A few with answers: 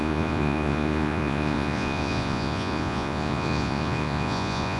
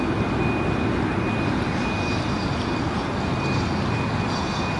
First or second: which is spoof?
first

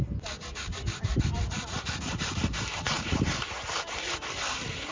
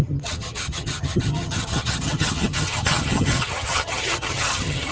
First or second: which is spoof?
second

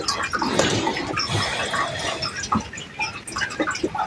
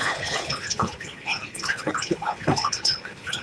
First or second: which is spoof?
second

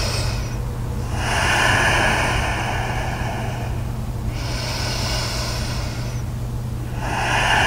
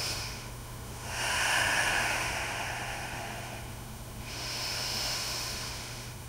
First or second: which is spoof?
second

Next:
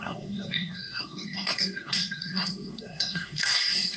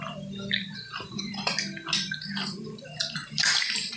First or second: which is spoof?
first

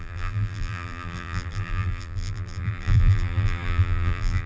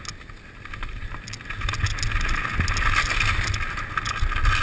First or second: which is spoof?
first